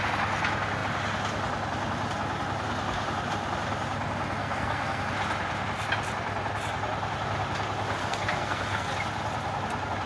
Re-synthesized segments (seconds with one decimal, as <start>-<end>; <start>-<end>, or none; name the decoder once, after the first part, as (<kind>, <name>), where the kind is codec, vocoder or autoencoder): 4.4-5.0 (codec, SNAC); 8.0-8.9